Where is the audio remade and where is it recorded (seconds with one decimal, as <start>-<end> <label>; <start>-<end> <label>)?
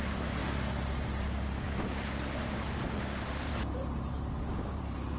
0.0-0.4 remade; 0.4-3.5 recorded; 3.5-5.2 remade